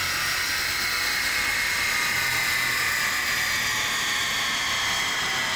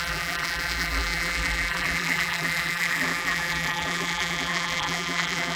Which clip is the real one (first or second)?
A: first